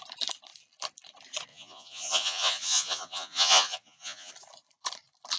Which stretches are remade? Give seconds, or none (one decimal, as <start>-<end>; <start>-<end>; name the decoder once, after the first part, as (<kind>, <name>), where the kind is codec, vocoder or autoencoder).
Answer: 1.5-4.3 (vocoder, Vocos)